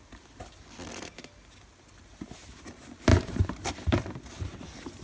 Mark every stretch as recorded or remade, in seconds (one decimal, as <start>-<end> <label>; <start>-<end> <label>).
0.0-3.1 recorded; 3.1-4.2 remade; 4.2-5.0 recorded